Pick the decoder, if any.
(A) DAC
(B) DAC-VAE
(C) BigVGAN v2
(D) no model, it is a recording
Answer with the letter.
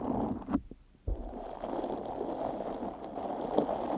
D